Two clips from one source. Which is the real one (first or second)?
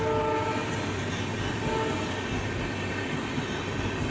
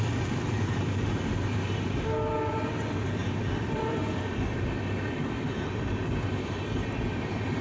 first